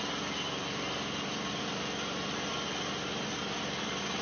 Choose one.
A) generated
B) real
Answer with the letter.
B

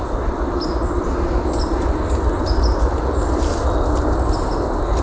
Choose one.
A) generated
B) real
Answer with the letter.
B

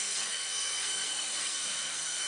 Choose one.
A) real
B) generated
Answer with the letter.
B